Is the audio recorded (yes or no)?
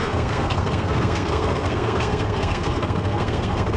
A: no